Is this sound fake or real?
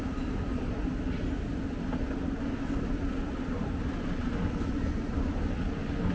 real